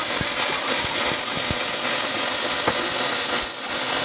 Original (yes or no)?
yes